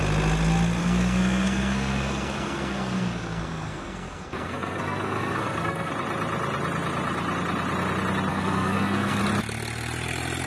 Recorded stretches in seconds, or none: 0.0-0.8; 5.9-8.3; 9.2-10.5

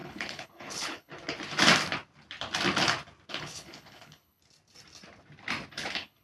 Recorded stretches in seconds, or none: 1.1-3.3; 4.4-5.7

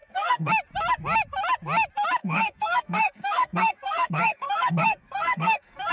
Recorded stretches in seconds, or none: 0.5-2.2